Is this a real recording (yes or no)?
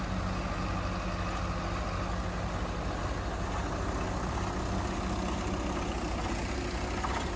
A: yes